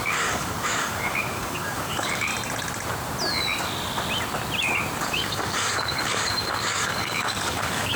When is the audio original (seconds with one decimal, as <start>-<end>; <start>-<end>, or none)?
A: 2.3-5.0